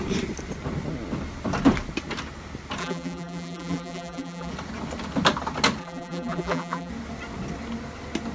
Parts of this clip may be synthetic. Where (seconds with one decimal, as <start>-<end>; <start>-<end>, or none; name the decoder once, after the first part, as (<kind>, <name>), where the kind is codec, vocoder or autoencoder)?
2.8-4.5 (vocoder, BigVGAN v2); 5.8-6.9